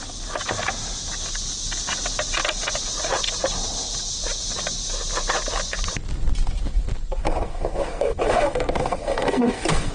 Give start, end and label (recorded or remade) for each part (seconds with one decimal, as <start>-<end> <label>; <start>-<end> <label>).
0.0-7.2 recorded; 7.2-9.9 remade